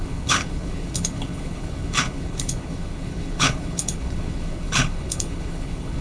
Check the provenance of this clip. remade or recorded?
remade